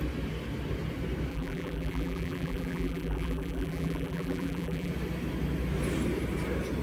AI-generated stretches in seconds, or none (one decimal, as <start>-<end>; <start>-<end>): 1.3-4.9